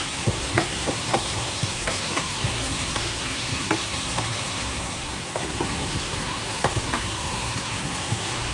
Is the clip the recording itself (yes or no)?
no